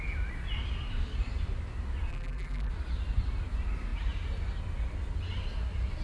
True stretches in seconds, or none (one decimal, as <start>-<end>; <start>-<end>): 0.0-2.1; 2.7-6.0